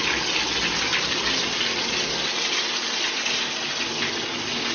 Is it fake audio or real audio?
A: real